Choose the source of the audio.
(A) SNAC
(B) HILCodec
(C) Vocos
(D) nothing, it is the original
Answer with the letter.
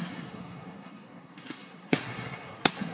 A